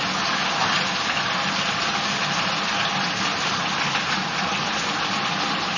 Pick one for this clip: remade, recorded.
recorded